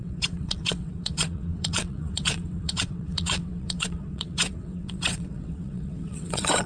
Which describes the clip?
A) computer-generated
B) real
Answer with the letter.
A